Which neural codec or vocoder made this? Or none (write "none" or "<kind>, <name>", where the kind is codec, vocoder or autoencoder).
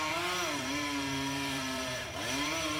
vocoder, BigVGAN v2